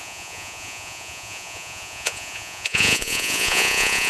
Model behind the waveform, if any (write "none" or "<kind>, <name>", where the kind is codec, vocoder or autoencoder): vocoder, Vocos